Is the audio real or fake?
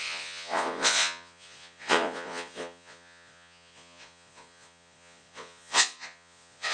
fake